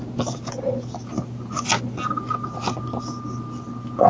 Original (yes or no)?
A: yes